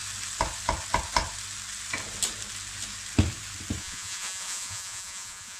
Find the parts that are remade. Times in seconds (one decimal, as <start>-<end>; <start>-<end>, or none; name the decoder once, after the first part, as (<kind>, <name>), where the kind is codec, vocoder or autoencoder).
3.8-5.6 (vocoder, Vocos)